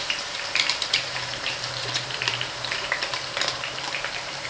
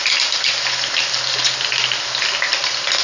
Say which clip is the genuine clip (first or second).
second